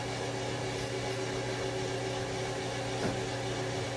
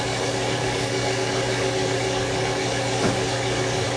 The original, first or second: first